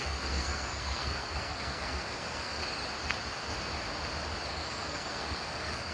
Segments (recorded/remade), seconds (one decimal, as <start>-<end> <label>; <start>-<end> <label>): 0.0-2.6 remade; 2.6-4.5 recorded; 4.5-5.9 remade